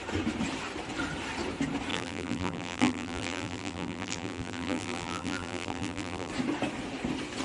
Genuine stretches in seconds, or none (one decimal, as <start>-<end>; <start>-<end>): 0.0-1.9; 6.3-7.4